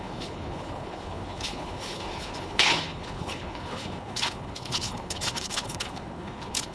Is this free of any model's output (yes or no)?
no